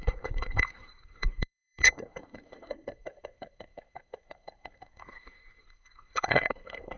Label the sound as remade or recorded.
remade